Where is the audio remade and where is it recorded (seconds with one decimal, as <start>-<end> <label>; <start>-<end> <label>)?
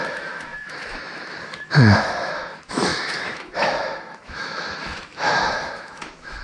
0.0-6.4 remade